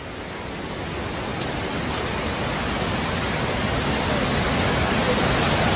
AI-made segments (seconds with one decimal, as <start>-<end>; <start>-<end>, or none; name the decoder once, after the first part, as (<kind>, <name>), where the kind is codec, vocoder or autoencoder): none